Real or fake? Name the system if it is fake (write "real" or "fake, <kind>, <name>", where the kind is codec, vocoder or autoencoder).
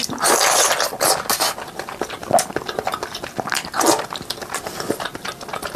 real